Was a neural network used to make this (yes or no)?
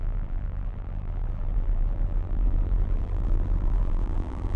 yes